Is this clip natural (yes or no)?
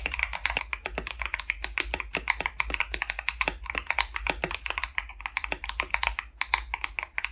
yes